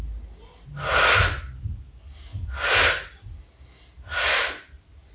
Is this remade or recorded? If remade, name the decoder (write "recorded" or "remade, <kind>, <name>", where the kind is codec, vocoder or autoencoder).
recorded